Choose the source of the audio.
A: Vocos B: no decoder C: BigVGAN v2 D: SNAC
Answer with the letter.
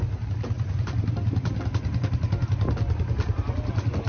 B